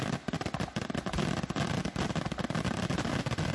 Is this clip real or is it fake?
real